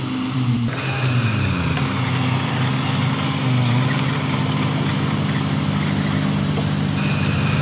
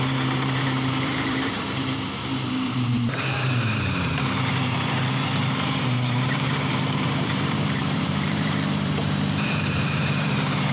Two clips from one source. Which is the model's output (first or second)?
second